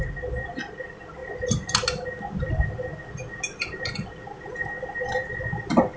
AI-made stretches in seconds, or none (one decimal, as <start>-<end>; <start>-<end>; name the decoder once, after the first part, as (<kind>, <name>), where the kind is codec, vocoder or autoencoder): none